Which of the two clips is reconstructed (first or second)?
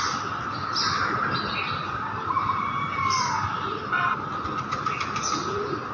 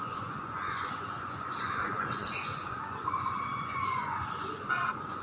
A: second